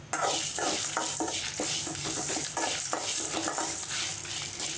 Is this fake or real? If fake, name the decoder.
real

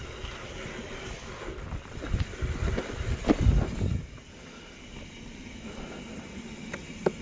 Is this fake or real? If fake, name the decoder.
real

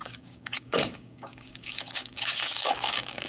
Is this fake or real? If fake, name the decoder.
fake, codec, DAC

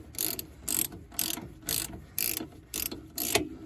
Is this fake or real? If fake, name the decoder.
real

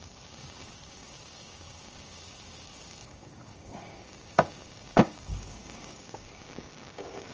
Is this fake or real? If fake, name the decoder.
fake, codec, DAC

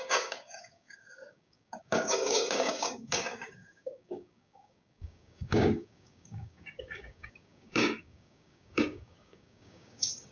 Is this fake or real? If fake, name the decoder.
fake, codec, DAC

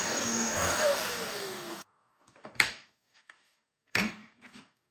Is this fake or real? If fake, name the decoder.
fake, codec, DAC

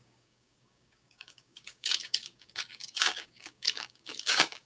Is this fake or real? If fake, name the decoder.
fake, codec, DAC